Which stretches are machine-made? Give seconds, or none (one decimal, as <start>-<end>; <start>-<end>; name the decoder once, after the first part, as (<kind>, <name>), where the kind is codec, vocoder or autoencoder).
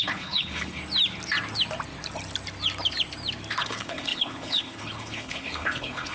0.0-0.8 (codec, HILCodec); 3.6-6.1